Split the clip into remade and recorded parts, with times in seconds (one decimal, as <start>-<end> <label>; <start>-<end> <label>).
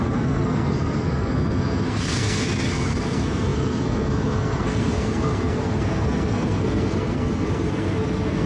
0.0-8.5 remade